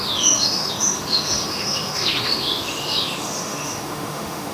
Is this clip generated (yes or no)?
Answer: yes